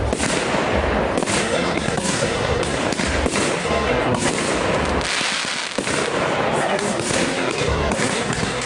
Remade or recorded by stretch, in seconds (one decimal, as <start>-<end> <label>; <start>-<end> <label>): 0.0-1.4 recorded; 1.4-2.8 remade; 2.8-3.6 recorded; 3.6-4.3 remade; 4.3-6.6 recorded; 6.6-8.7 remade